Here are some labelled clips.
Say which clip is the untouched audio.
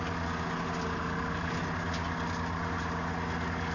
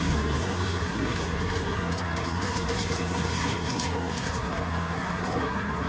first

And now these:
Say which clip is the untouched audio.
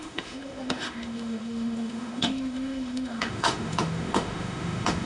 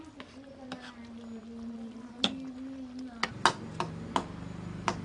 second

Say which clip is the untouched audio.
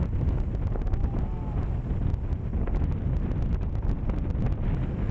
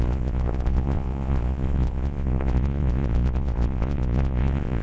first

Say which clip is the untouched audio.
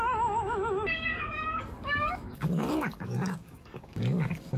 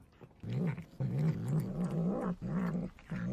second